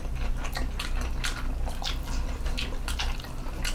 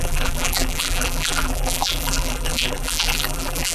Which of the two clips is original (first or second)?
first